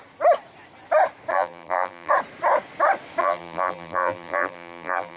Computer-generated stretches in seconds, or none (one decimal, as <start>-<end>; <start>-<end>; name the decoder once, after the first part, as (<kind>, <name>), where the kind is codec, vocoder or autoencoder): 1.3-2.1 (vocoder, BigVGAN v2); 3.2-5.2

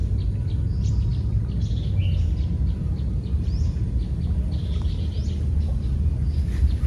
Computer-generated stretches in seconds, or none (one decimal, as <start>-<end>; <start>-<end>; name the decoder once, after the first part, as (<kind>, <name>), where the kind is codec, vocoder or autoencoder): none

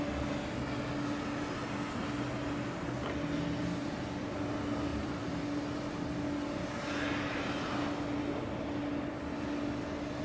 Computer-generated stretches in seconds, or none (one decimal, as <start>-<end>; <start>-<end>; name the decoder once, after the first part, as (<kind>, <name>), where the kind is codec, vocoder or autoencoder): 4.9-5.4 (vocoder, BigVGAN v2)

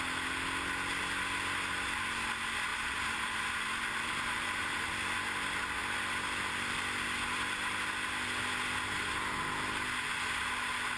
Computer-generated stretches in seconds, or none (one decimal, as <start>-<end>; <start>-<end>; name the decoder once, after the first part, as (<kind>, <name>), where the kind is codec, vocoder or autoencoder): 2.7-4.9 (vocoder, BigVGAN v2)